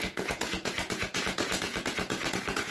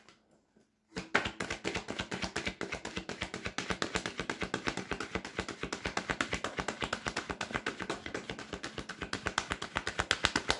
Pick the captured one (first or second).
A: second